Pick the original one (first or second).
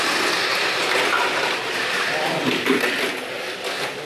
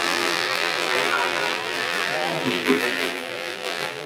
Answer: first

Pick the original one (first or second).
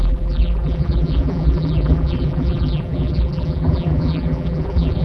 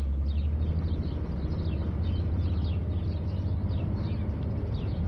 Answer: second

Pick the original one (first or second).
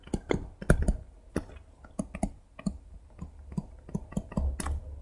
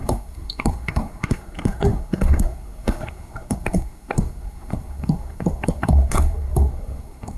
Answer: first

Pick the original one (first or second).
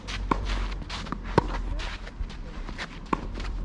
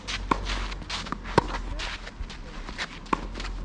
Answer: second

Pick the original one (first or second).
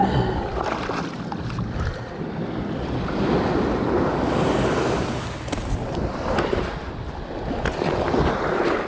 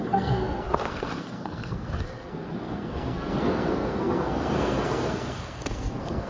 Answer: first